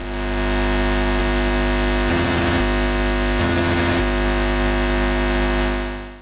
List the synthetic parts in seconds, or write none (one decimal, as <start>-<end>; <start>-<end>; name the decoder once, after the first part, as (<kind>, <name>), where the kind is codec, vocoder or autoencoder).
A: 2.1-2.6 (vocoder, HiFi-GAN); 3.4-4.0